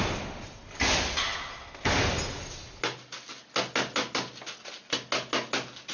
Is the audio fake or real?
real